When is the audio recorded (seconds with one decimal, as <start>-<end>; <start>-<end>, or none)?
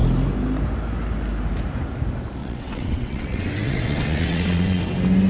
0.0-2.4; 4.8-5.3